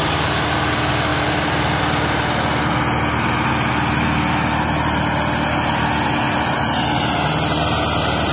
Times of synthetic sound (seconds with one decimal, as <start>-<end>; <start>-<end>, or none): 1.1-1.8